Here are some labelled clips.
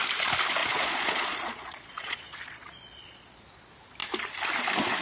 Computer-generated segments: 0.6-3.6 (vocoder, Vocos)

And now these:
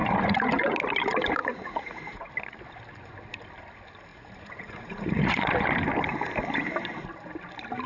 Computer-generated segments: 1.4-2.3 (vocoder, Vocos); 4.1-5.5

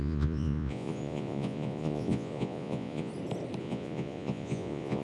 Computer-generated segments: 0.0-3.1 (vocoder, Vocos); 3.6-5.0

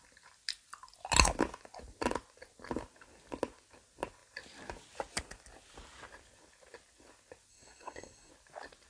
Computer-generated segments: 7.5-8.3 (codec, SNAC)

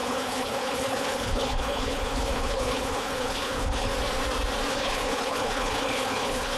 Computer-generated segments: 0.0-3.9 (codec, HILCodec); 4.7-6.6